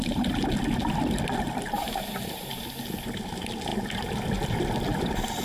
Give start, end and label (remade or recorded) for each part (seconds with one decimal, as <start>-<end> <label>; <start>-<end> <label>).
0.0-3.7 recorded; 3.7-5.4 remade